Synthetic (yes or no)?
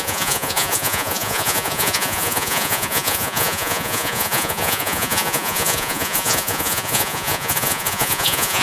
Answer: yes